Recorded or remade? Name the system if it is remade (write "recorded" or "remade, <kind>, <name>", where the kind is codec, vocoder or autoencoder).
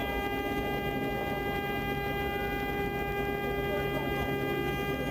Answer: recorded